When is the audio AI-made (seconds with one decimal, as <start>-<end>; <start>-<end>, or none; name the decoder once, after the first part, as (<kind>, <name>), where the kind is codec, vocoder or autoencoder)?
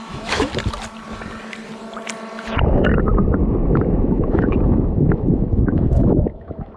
0.0-0.5 (autoencoder, DAC-VAE); 4.0-6.8